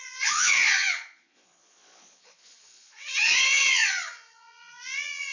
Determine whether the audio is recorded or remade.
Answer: remade